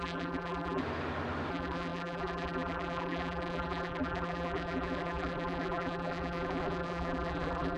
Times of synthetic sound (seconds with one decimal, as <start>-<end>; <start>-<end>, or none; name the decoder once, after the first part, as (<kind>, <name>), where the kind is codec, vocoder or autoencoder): 0.0-0.8 (vocoder, BigVGAN v2); 1.5-7.8